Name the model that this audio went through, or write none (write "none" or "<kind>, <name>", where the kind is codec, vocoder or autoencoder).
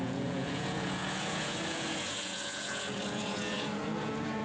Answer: vocoder, Vocos